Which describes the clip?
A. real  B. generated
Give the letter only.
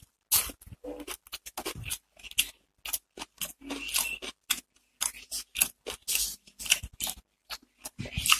A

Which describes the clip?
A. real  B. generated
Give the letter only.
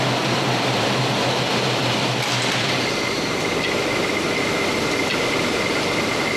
B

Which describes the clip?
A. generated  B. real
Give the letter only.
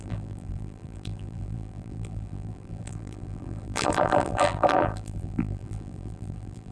A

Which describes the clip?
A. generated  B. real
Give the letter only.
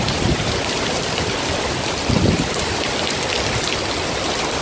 A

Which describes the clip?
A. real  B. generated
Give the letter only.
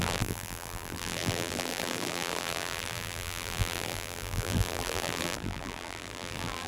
B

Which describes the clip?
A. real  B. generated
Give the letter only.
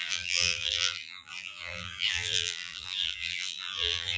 B